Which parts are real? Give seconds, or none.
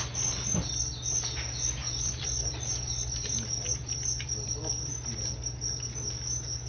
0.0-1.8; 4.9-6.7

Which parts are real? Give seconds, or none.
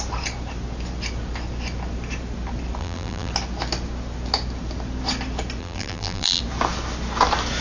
0.0-2.8; 3.3-5.6; 6.4-7.6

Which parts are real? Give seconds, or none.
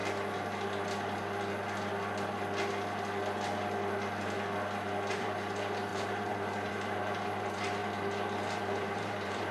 0.0-5.1; 7.8-8.6